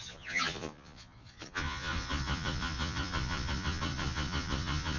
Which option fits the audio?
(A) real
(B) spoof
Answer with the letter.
B